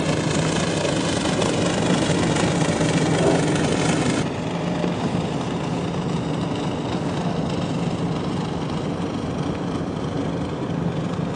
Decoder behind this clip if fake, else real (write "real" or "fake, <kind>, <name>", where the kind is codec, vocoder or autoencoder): real